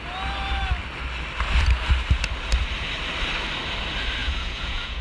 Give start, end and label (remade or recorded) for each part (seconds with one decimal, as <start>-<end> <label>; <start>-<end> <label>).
0.0-4.2 recorded; 4.2-5.0 remade